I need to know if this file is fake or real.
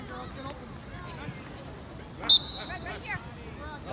real